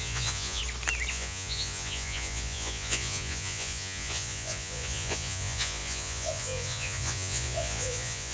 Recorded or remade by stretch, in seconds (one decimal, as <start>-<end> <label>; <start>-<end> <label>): 0.0-0.6 remade; 0.6-1.1 recorded; 1.1-8.3 remade

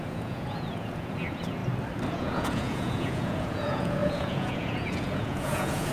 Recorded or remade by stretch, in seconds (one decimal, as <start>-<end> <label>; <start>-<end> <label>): 0.0-1.6 remade; 1.6-2.1 recorded; 2.1-5.9 remade

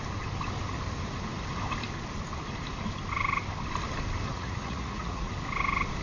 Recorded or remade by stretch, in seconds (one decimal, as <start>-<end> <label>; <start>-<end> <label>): 0.0-4.3 recorded; 4.3-5.3 remade; 5.3-6.0 recorded

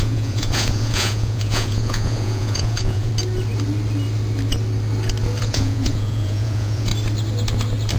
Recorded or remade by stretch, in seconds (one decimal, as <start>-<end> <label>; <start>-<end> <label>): 0.0-3.1 remade; 3.1-5.4 recorded; 5.4-6.9 remade; 6.9-8.0 recorded

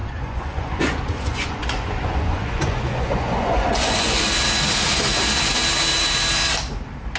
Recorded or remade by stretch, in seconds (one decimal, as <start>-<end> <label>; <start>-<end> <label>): 0.0-4.3 remade; 4.3-7.2 recorded

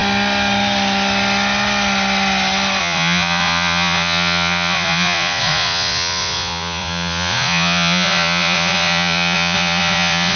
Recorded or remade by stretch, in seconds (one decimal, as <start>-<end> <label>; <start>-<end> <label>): 0.0-2.8 recorded; 2.8-10.4 remade

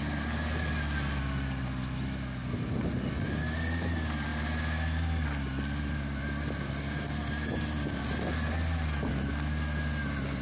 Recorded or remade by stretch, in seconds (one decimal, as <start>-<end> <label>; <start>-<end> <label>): 0.0-10.4 recorded